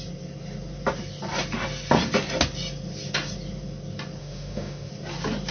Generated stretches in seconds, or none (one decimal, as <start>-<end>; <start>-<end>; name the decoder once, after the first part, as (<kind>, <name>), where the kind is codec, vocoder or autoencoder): 4.2-4.9 (autoencoder, DAC-VAE)